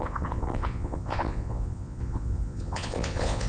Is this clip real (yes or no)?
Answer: no